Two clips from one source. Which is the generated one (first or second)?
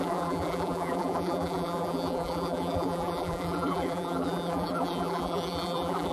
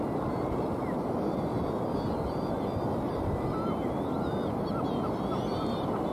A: first